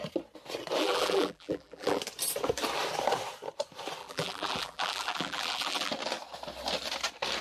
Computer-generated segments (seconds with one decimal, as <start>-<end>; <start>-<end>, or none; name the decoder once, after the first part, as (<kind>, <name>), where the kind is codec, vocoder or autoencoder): 0.8-2.0 (vocoder, BigVGAN v2); 4.0-5.9

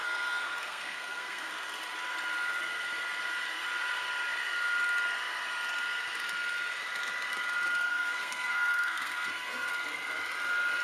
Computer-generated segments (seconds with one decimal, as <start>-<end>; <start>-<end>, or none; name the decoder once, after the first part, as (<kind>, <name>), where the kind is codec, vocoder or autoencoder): 0.0-1.5 (codec, SNAC); 7.9-9.7

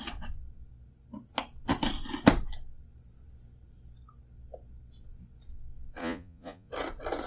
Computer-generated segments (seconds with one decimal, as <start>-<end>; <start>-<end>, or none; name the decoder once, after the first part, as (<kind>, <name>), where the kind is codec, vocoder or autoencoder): 6.0-6.7 (vocoder, Vocos)